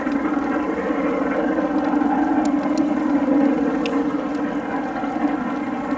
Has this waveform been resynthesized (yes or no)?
no